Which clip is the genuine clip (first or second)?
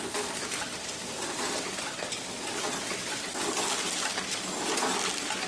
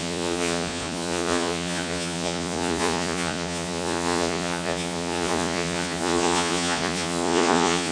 first